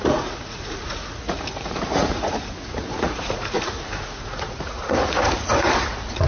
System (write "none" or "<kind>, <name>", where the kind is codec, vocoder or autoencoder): vocoder, Vocos